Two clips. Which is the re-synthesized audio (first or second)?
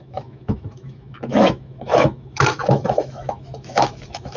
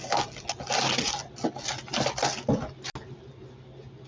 first